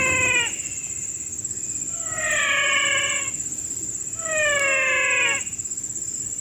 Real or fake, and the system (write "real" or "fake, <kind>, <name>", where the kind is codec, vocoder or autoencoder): real